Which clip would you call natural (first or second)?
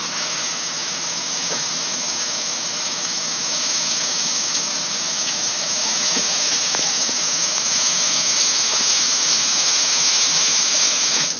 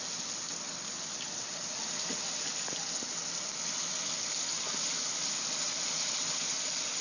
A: second